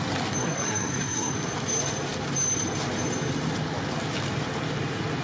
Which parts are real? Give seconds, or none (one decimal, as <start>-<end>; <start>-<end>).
0.0-0.4; 1.3-5.2